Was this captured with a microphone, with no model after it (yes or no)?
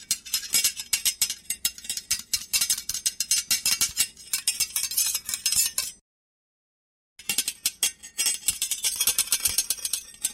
yes